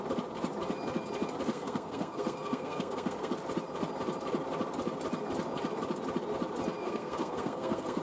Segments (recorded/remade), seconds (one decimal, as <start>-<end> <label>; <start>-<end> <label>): 0.0-1.5 recorded; 1.5-3.3 remade; 3.3-6.8 recorded; 6.8-8.0 remade